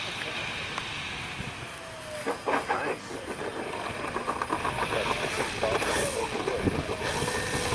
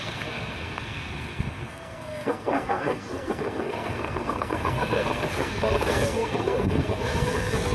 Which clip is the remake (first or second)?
second